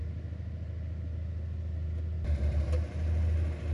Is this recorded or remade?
recorded